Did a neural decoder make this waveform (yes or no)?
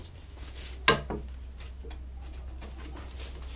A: no